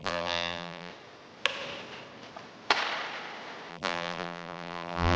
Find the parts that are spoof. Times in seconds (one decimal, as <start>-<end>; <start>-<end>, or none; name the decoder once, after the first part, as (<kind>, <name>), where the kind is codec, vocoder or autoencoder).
0.0-0.9 (vocoder, BigVGAN v2); 3.7-5.2